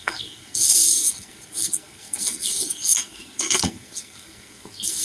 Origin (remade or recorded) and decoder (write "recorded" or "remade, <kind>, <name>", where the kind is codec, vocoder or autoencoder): remade, codec, SNAC